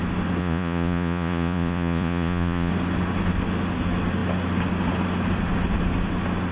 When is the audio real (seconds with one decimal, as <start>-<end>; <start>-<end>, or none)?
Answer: 0.0-0.4; 2.7-6.5